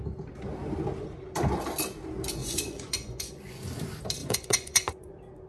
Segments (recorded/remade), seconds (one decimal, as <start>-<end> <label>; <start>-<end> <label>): 0.0-2.4 recorded; 2.4-3.6 remade; 3.6-4.2 recorded; 4.2-5.1 remade; 5.1-5.5 recorded